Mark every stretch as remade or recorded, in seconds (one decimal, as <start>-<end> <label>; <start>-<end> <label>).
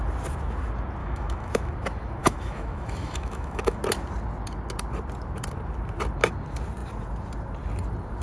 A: 0.0-1.0 recorded; 1.0-1.7 remade; 1.7-2.2 recorded; 2.2-3.8 remade; 3.8-8.2 recorded